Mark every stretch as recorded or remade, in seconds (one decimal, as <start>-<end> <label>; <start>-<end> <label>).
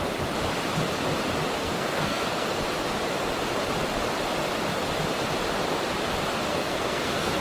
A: 0.0-1.6 recorded; 1.6-2.6 remade; 2.6-6.5 recorded; 6.5-7.4 remade